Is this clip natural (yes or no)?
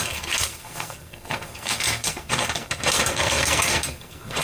no